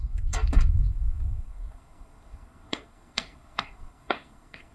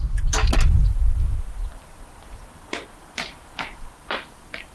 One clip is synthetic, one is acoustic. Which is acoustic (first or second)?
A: second